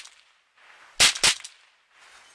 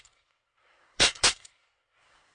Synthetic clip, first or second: second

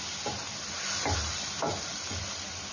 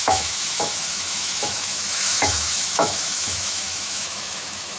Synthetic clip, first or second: second